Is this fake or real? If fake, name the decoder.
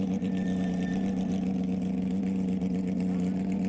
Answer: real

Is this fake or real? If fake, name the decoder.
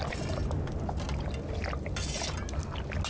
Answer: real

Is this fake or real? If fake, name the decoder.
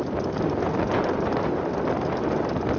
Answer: real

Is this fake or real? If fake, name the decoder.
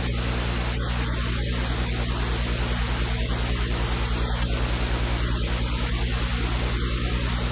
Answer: real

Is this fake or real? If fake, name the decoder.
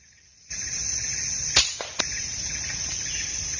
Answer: real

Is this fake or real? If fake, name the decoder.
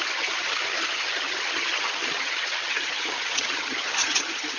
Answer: fake, vocoder, HiFi-GAN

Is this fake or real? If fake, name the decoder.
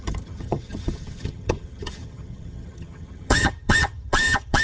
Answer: fake, vocoder, HiFi-GAN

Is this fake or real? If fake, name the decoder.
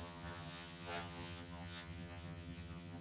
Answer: fake, vocoder, HiFi-GAN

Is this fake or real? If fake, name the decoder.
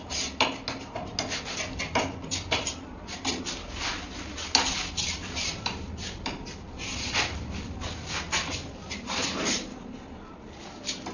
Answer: real